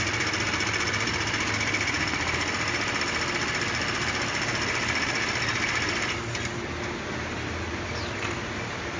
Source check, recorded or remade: recorded